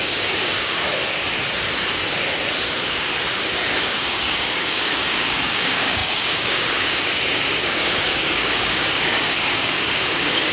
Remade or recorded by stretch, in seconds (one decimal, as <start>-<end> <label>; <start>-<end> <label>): 0.0-0.9 remade; 0.9-3.8 recorded; 3.8-10.5 remade